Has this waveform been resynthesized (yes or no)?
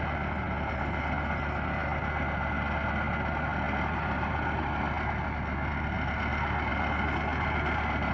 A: no